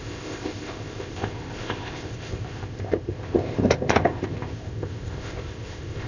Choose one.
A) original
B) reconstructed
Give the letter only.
B